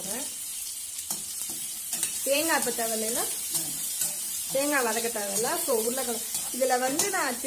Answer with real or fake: fake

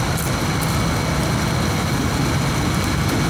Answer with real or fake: real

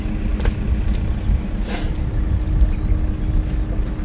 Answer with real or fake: real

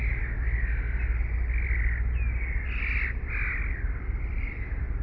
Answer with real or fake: real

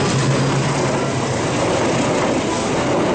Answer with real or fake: real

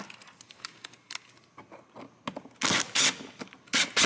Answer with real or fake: real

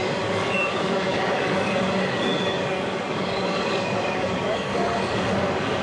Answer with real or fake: fake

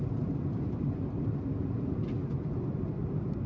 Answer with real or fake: fake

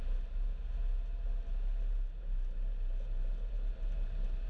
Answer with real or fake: real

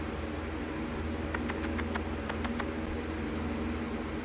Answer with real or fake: real